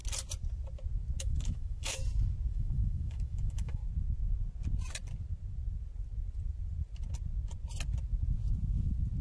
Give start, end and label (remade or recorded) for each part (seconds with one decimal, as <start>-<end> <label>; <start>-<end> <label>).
0.0-1.2 recorded; 1.2-2.0 remade; 2.0-2.5 recorded; 2.5-3.8 remade; 3.8-9.2 recorded